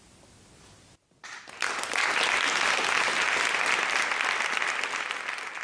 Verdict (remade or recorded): recorded